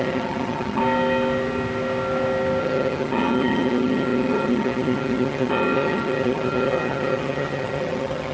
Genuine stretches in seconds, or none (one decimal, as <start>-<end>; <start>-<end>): 0.8-2.6